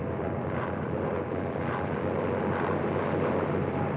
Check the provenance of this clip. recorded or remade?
recorded